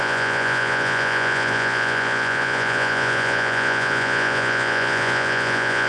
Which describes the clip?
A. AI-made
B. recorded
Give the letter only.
A